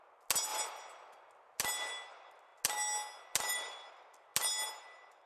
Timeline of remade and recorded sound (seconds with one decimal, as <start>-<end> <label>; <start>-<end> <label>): 0.0-5.3 recorded